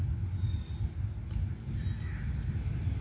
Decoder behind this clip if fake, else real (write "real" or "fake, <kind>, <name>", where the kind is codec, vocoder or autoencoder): real